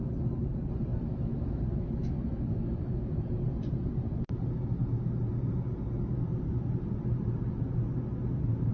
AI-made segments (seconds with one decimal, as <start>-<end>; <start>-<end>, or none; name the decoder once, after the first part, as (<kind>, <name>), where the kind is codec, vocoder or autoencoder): 0.9-3.2 (autoencoder, DAC-VAE)